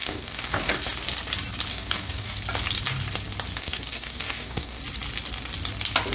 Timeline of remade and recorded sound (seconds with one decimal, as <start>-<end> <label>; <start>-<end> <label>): 0.0-0.8 remade; 0.8-1.7 recorded; 1.7-2.4 remade; 2.4-3.6 recorded; 3.6-4.8 remade; 4.8-6.1 recorded